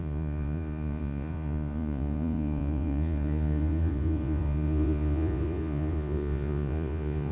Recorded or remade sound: remade